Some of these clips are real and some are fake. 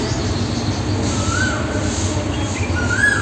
real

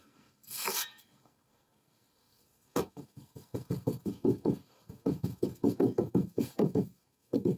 fake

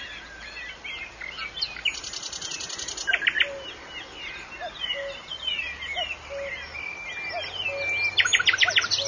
real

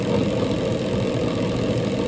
real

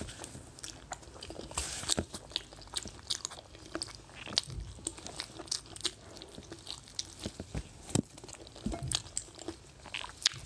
real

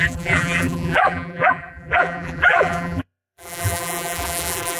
fake